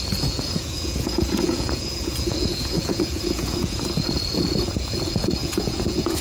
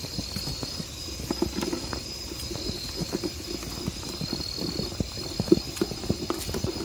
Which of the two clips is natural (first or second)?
second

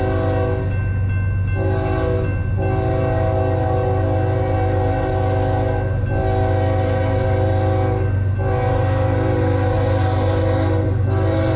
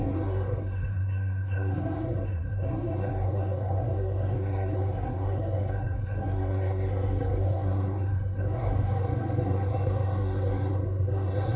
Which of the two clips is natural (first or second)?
first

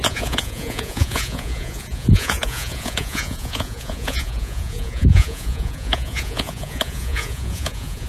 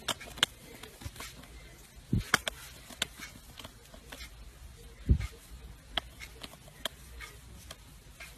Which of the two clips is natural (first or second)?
second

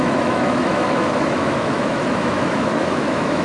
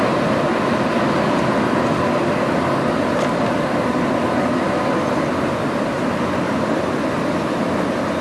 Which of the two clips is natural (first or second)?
second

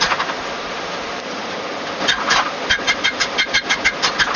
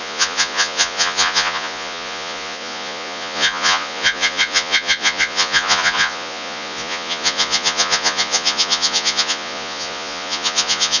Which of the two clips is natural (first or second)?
first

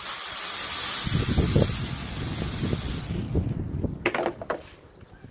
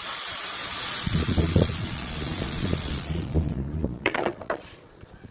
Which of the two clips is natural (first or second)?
first